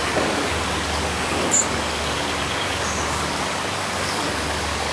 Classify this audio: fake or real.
fake